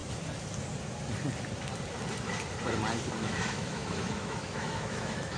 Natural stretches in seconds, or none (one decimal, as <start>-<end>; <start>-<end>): 0.0-3.1